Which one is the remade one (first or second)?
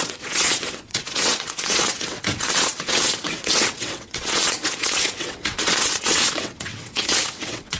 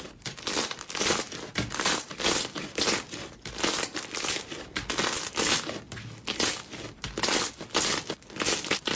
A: first